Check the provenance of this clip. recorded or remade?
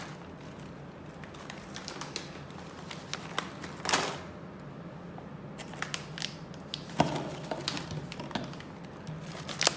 recorded